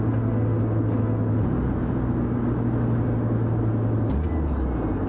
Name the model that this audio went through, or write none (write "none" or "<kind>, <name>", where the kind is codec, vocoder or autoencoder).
none